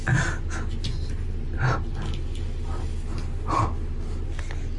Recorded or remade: recorded